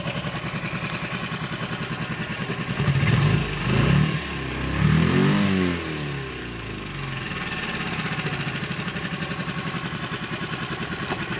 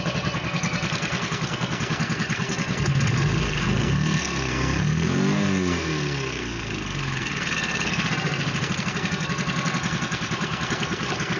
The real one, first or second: first